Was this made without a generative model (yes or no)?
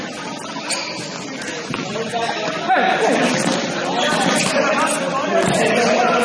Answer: yes